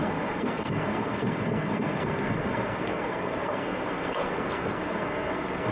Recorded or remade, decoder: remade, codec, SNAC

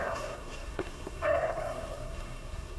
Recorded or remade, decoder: remade, codec, SNAC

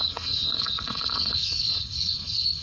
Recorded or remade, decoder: remade, codec, SNAC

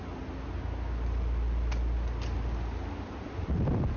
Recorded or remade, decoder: recorded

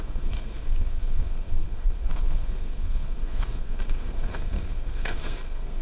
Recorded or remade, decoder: remade, codec, SNAC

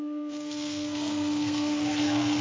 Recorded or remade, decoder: remade, codec, SNAC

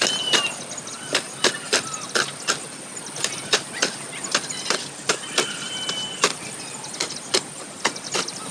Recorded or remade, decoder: recorded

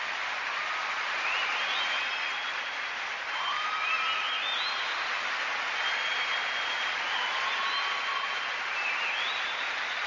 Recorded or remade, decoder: recorded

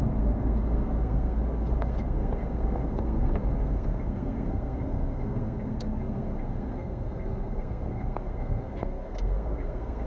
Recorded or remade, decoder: remade, codec, SNAC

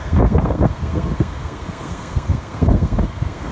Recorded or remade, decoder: remade, codec, SNAC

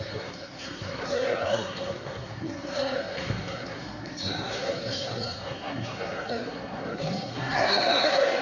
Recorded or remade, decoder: remade, codec, SNAC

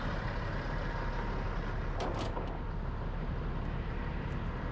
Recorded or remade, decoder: recorded